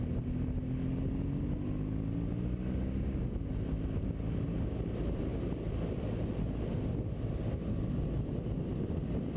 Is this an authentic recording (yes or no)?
yes